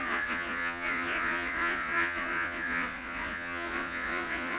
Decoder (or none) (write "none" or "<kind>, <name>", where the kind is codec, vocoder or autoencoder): vocoder, Vocos